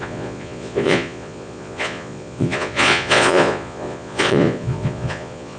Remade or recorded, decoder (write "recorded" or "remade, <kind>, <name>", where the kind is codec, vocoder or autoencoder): remade, vocoder, Vocos